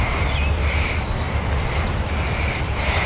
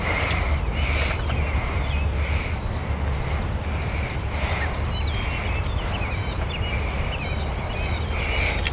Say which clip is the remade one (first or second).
first